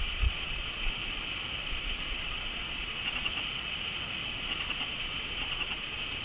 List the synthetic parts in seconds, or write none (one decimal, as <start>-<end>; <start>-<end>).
0.0-1.0; 1.7-3.3; 4.3-6.2

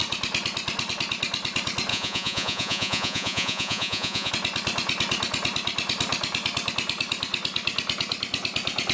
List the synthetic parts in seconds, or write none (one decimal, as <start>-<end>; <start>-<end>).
1.9-4.3